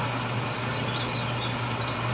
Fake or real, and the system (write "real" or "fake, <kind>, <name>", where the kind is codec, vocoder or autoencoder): real